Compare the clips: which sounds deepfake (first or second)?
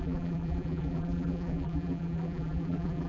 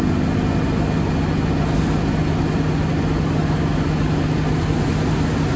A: first